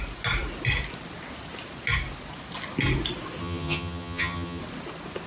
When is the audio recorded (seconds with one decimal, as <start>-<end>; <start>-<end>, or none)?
0.0-3.4; 4.6-5.3